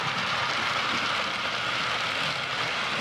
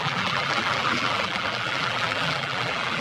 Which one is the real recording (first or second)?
first